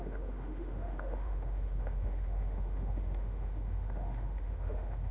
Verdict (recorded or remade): remade